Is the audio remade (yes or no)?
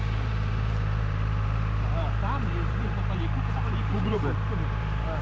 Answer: yes